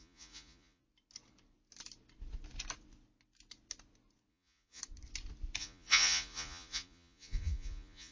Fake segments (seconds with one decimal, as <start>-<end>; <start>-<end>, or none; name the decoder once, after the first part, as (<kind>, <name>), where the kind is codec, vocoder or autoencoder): 0.0-0.8 (vocoder, Vocos); 4.3-4.8; 5.6-8.1